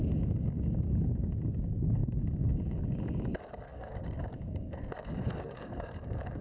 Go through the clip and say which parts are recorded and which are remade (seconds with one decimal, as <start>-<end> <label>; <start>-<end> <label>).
0.0-6.4 remade